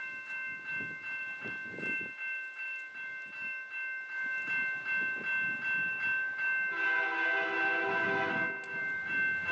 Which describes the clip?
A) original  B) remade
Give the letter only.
A